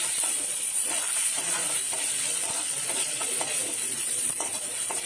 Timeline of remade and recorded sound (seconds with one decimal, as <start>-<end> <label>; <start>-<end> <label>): 0.0-1.6 remade; 1.6-2.1 recorded; 2.1-5.1 remade